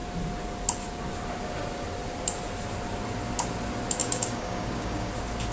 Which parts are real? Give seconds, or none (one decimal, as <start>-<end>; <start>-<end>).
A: 0.0-4.0; 5.1-5.5